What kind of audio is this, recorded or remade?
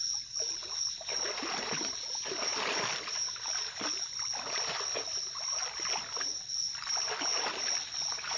recorded